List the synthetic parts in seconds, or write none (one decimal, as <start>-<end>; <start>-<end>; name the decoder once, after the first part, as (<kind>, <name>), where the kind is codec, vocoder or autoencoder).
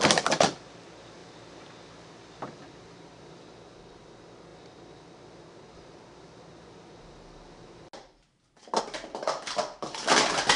none